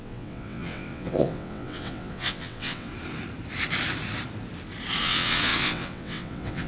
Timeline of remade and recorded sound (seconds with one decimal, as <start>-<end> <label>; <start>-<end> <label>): 0.0-2.9 remade; 2.9-5.0 recorded; 5.0-6.7 remade